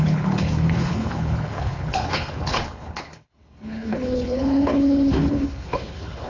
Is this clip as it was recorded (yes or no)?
no